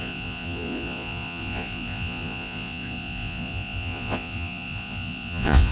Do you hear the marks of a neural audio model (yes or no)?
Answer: yes